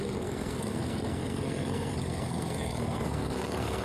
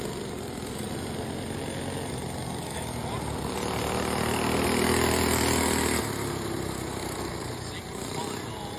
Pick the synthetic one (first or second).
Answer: first